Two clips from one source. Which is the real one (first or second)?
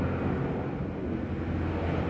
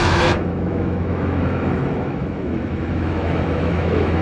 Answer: first